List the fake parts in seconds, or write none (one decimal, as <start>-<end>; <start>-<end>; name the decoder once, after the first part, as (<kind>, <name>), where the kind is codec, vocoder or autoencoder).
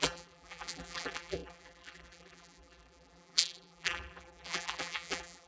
0.0-5.5 (vocoder, BigVGAN v2)